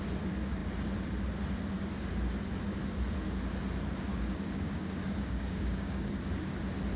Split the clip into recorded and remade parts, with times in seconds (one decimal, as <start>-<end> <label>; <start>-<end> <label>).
0.0-4.1 recorded; 4.1-6.1 remade; 6.1-7.0 recorded